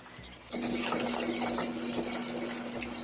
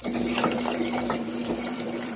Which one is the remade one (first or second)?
second